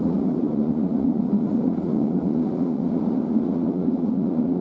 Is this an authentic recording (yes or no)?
no